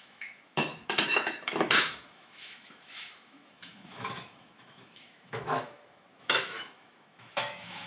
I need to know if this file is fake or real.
fake